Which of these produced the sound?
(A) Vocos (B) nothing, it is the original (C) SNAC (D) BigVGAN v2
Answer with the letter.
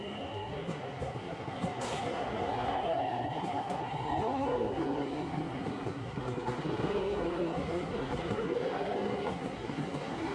C